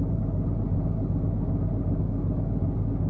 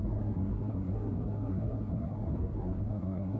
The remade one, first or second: second